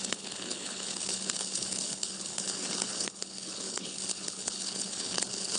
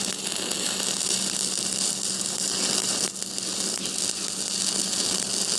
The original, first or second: second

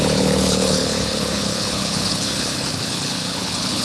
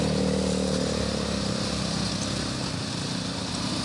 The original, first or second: second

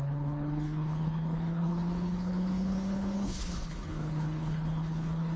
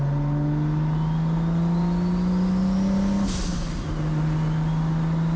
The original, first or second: second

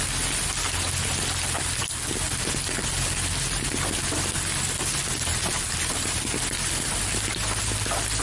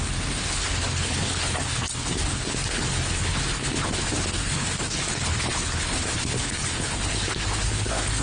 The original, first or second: first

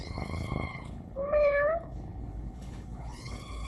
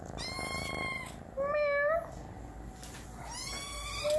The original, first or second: second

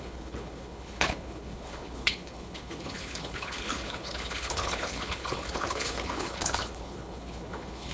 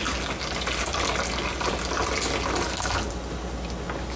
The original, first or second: second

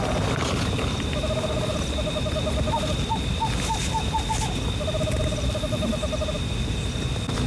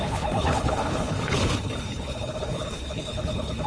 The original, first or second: first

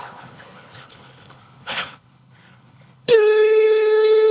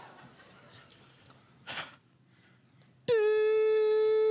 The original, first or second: second